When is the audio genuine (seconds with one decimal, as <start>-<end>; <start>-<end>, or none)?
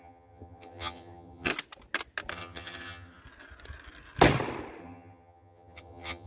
1.5-2.3; 3.2-4.8